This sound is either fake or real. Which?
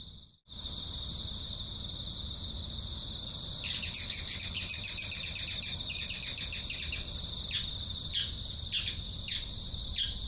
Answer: real